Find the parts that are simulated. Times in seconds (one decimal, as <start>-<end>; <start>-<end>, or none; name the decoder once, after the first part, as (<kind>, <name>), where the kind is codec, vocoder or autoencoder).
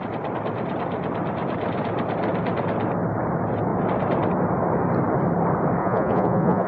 5.8-6.7 (vocoder, Vocos)